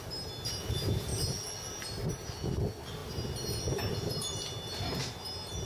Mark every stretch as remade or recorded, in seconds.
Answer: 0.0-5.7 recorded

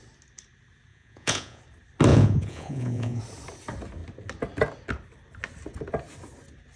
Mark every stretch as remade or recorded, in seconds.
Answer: 0.0-0.9 recorded; 0.9-1.6 remade; 1.6-2.1 recorded; 2.1-3.2 remade; 3.2-6.8 recorded